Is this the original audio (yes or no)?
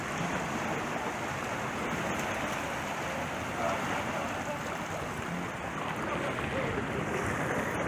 yes